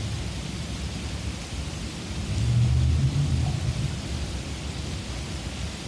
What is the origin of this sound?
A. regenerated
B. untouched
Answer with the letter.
B